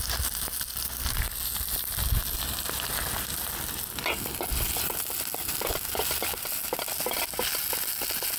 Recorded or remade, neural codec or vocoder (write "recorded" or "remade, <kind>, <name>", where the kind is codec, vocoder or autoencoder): recorded